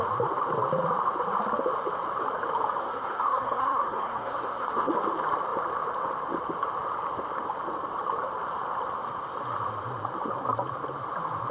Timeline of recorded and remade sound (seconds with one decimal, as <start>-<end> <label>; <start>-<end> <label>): 0.0-2.8 recorded; 2.8-4.9 remade; 4.9-11.5 recorded